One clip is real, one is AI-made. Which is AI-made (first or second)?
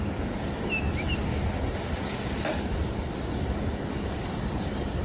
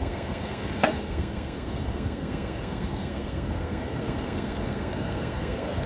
second